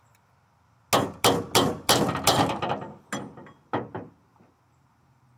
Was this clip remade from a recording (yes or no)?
no